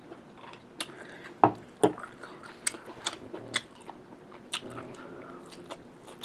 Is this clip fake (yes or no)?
no